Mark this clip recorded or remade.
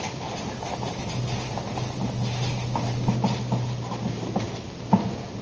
recorded